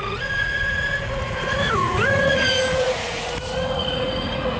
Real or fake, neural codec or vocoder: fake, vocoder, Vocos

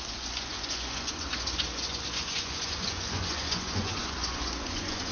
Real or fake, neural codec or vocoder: fake, vocoder, Vocos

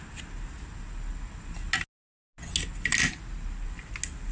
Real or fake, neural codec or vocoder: real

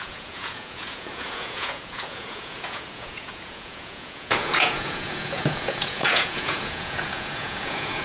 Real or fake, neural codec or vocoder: fake, vocoder, Vocos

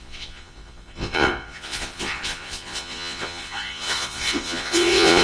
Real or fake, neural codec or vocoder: fake, vocoder, Vocos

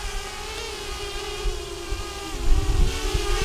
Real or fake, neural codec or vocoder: real